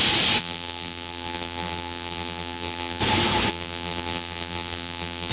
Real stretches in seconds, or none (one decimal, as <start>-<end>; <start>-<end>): 0.0-0.4; 3.0-3.5